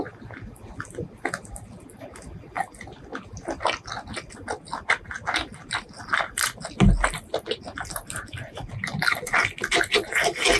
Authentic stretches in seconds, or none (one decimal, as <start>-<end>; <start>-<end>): 0.0-10.6